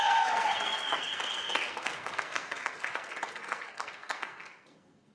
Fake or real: fake